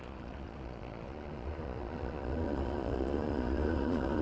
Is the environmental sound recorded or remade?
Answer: remade